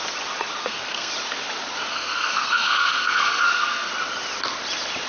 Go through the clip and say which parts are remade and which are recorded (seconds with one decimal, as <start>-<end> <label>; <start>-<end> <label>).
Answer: 0.0-0.6 recorded; 0.6-1.1 remade; 1.1-1.9 recorded; 1.9-3.9 remade; 3.9-5.1 recorded